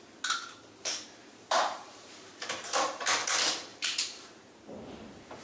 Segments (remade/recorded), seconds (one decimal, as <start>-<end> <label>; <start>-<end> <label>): 0.0-1.2 recorded; 1.2-2.3 remade; 2.3-3.7 recorded; 3.7-4.8 remade; 4.8-5.4 recorded